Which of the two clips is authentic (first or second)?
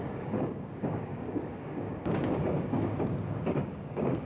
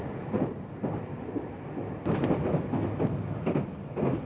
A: second